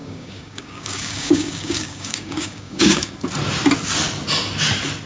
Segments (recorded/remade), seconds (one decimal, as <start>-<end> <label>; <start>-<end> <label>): 0.0-3.1 remade; 3.1-5.1 recorded